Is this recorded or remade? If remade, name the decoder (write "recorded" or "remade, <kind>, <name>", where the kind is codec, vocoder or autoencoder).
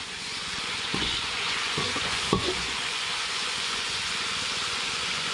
remade, vocoder, Vocos